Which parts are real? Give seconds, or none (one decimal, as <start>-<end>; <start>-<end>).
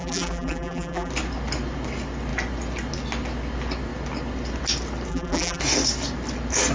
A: 1.1-5.1; 5.6-6.7